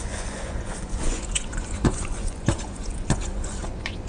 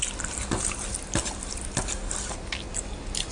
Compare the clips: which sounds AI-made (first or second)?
first